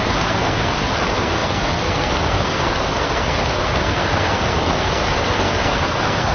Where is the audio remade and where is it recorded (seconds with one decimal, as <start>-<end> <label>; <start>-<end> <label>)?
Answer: 0.0-6.3 remade